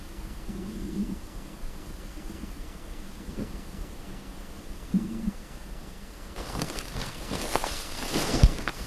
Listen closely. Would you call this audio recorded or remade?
remade